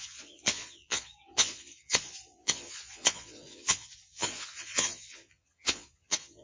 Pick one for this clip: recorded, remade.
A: remade